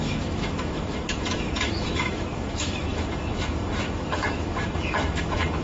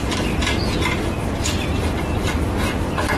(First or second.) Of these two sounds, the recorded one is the second